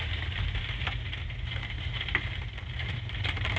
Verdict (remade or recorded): remade